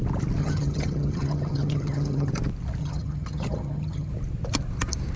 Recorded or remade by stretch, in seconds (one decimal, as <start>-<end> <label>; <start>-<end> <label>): 0.0-0.4 recorded; 0.4-2.3 remade; 2.3-2.8 recorded; 2.8-4.1 remade; 4.1-5.2 recorded